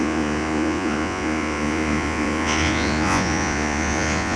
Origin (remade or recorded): remade